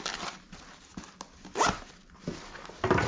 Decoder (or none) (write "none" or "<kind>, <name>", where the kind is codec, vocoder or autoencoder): none